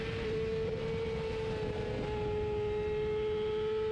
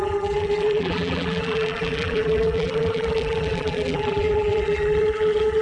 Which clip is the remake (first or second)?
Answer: second